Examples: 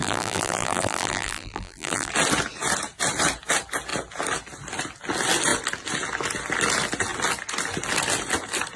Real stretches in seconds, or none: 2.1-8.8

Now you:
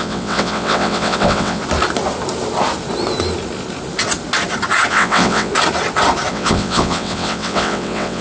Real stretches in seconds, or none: 1.6-4.9; 5.5-6.3

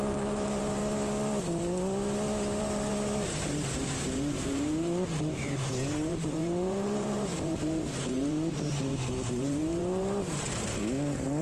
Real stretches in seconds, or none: 0.8-2.6; 10.8-11.4

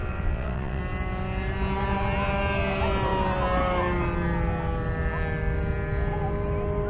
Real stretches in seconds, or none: 0.8-6.9

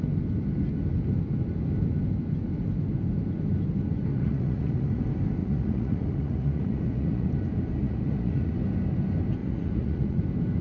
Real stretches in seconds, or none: 0.0-4.1; 5.0-5.4; 7.3-7.8; 8.5-9.4; 10.2-10.6